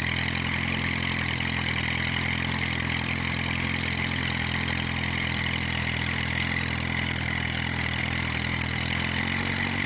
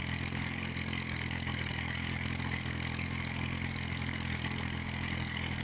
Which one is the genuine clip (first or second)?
first